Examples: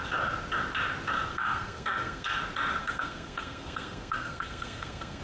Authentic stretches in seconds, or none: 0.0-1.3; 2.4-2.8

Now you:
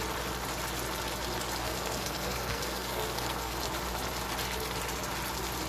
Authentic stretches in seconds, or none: 0.0-1.6; 3.6-5.7

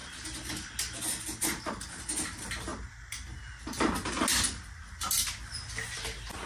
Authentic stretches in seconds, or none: 0.0-6.5

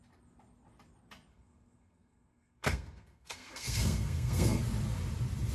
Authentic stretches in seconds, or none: 0.0-1.3; 4.6-5.5

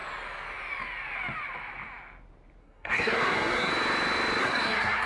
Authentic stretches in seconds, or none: 0.0-2.6; 3.7-4.4